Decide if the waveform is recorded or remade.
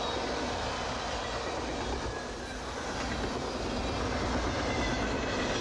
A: recorded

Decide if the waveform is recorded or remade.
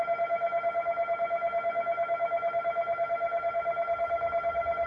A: remade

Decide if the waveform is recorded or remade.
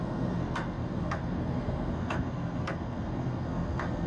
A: remade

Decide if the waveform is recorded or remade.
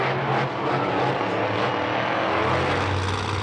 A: recorded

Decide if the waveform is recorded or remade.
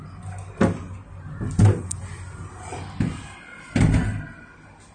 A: recorded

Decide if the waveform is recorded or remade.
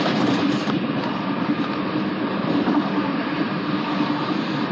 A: remade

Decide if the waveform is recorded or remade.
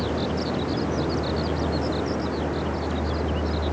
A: recorded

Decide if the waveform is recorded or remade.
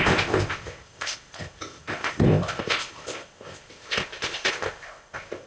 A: remade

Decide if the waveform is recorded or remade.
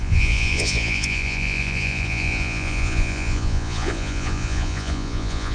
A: remade